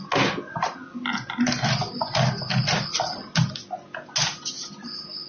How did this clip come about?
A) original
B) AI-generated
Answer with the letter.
A